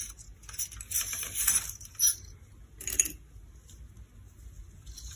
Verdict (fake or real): real